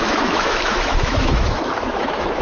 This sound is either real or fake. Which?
fake